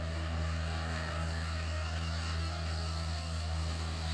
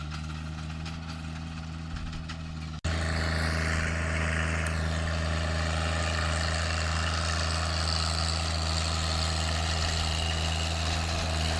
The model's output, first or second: first